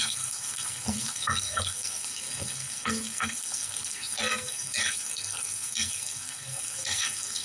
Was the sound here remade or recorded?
remade